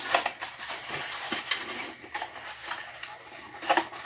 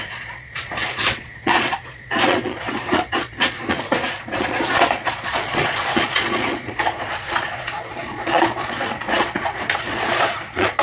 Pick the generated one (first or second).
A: second